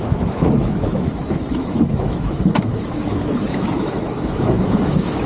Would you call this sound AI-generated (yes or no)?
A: yes